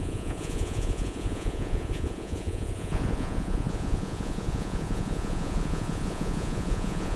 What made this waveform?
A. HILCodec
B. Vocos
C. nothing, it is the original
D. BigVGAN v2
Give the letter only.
B